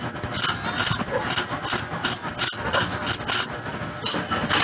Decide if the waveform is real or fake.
real